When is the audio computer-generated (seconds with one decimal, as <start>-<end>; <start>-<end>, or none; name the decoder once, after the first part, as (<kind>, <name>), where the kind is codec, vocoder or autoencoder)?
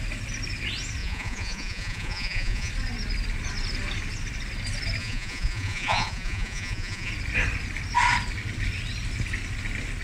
1.0-2.7 (vocoder, Vocos); 5.0-7.1